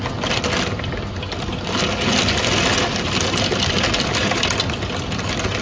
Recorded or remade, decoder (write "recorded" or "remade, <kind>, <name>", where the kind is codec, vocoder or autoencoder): recorded